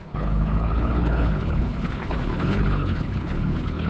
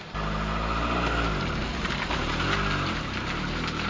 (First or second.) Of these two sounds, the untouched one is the second